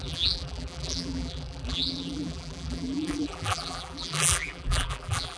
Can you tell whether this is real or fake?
fake